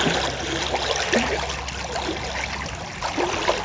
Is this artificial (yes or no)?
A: no